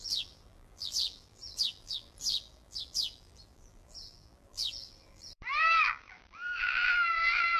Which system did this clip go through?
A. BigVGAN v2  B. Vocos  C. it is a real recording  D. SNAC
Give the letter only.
A